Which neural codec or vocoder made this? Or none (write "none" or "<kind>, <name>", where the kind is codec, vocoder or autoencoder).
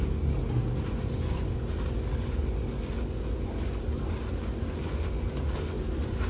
none